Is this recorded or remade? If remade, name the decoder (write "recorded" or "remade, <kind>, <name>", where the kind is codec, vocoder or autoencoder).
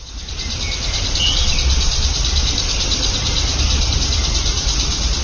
recorded